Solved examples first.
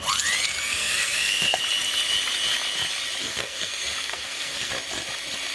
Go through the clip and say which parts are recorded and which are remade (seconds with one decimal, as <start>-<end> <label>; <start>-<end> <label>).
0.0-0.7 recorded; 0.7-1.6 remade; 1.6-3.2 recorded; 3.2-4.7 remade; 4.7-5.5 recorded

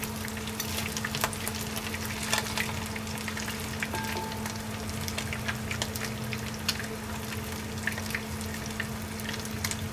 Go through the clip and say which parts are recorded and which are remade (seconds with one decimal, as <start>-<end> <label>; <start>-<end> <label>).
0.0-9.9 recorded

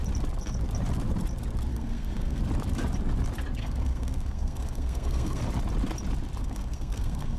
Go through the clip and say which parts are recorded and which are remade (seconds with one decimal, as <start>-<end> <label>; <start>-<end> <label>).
0.0-1.7 recorded; 1.7-2.4 remade; 2.4-3.6 recorded; 3.6-5.4 remade; 5.4-6.4 recorded; 6.4-7.4 remade

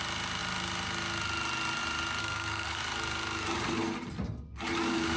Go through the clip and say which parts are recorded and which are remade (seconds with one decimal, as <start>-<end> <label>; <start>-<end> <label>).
0.0-2.2 recorded; 2.2-2.8 remade; 2.8-5.2 recorded